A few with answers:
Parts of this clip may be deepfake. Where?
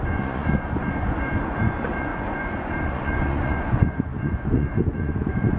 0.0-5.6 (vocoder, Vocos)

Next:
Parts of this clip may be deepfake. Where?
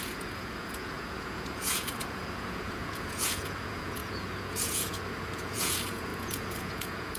0.0-7.2 (vocoder, Vocos)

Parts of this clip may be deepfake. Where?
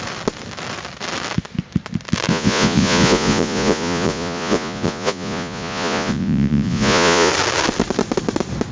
2.3-7.3 (vocoder, Vocos)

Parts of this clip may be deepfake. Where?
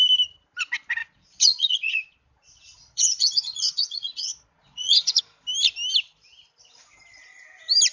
1.0-5.2 (vocoder, Vocos)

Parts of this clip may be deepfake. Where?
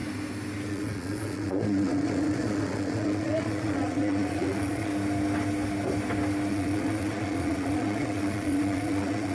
0.7-4.9 (vocoder, Vocos); 6.5-9.3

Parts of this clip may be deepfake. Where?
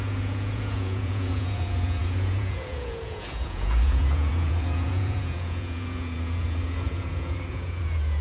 0.0-8.2 (vocoder, Vocos)